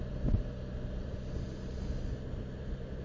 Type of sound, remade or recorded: recorded